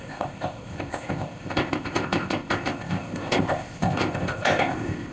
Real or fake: fake